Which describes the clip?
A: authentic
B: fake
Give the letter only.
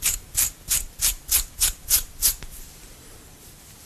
B